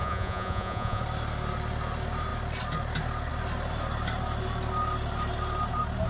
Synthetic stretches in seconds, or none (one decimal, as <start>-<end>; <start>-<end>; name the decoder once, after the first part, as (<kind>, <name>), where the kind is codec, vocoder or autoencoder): 0.0-1.0 (vocoder, Vocos)